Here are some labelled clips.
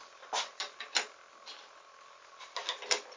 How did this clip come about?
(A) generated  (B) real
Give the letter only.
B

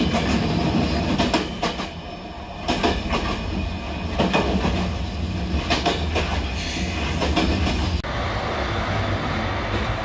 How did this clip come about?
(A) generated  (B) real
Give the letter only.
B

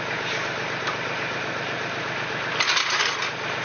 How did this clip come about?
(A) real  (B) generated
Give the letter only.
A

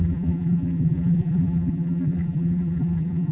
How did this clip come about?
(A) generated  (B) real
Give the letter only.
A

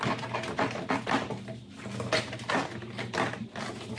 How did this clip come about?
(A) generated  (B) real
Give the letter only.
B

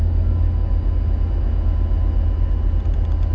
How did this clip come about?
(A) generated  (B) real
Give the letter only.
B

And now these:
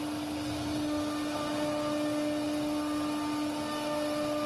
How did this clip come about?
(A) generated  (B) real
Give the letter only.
B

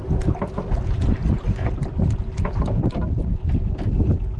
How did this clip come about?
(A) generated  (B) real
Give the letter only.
B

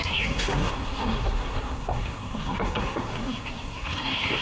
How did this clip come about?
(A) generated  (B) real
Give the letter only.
A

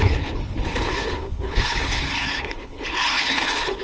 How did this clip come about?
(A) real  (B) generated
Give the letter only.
B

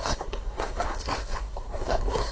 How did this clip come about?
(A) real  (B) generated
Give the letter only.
B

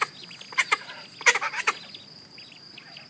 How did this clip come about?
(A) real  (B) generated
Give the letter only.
A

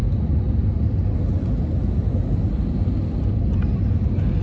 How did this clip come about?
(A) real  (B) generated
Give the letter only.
A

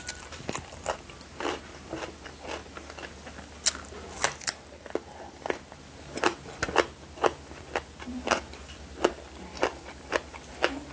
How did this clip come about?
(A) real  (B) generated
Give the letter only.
A